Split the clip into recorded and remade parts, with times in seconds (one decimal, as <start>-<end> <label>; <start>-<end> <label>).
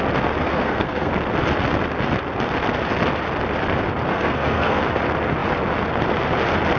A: 0.0-0.4 recorded; 0.4-1.1 remade; 1.1-4.1 recorded; 4.1-4.8 remade; 4.8-6.8 recorded